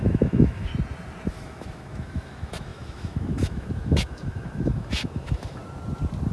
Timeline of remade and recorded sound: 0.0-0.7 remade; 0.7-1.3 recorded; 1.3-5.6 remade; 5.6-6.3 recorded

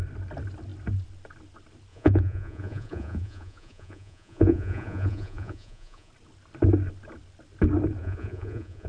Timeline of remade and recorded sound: 0.0-1.9 recorded; 1.9-6.1 remade; 6.1-8.0 recorded; 8.0-8.9 remade

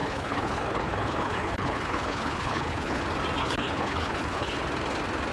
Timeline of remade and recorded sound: 0.0-3.0 remade; 3.0-3.4 recorded; 3.4-4.6 remade; 4.6-5.3 recorded

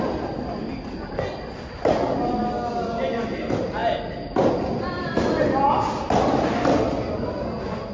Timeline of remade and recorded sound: 0.0-7.9 recorded

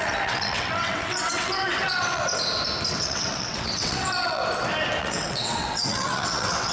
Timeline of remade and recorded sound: 0.0-2.2 remade; 2.2-2.9 recorded; 2.9-4.4 remade; 4.4-5.0 recorded; 5.0-6.7 remade

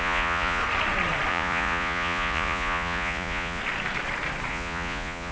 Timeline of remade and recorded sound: 0.0-0.6 remade; 0.6-1.3 recorded; 1.3-3.6 remade; 3.6-4.5 recorded; 4.5-5.3 remade